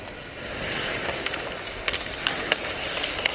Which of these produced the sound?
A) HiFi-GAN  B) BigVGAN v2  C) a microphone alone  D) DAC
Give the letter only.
C